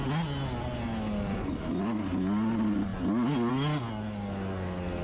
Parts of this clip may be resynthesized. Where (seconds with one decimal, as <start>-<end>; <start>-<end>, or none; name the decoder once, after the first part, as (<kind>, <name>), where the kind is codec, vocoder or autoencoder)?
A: none